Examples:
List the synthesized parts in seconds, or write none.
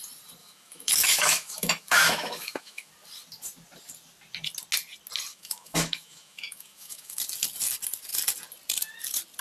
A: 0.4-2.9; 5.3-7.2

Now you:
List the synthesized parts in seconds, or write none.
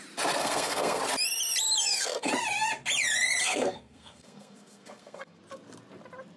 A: 0.4-1.0; 1.8-2.3; 3.4-5.4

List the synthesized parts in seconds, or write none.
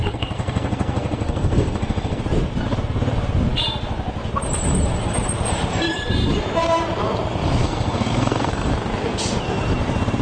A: 0.0-2.2; 7.6-8.7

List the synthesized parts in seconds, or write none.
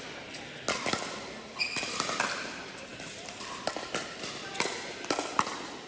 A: none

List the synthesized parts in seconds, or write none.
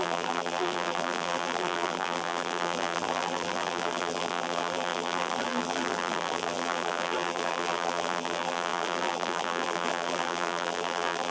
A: 0.0-11.3